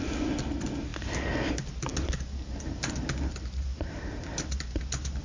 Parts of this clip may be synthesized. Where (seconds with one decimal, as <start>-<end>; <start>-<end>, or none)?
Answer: none